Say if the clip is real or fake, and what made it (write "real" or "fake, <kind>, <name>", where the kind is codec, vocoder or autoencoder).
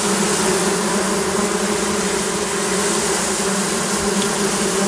real